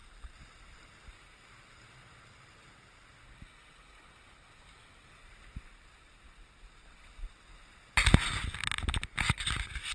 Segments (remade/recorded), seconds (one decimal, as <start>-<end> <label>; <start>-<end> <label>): 0.0-9.9 recorded